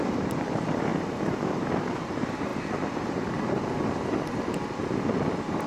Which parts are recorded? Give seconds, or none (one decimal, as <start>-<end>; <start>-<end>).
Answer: 0.9-1.7